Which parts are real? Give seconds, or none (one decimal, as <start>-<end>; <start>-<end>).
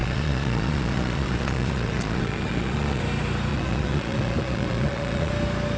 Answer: 3.0-3.5; 5.3-5.8